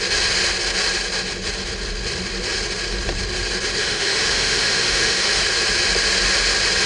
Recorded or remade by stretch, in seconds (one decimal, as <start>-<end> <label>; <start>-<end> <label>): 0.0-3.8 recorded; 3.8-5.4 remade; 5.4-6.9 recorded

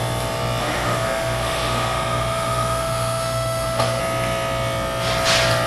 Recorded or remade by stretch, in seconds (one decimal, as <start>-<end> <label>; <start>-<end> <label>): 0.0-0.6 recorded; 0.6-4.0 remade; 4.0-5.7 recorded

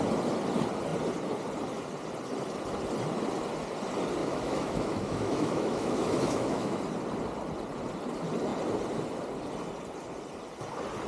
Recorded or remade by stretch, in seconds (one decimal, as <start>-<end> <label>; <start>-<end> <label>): 0.0-4.2 recorded; 4.2-6.8 remade; 6.8-11.1 recorded

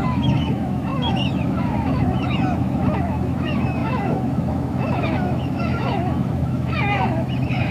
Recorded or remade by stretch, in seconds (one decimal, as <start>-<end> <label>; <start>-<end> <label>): 0.0-7.7 remade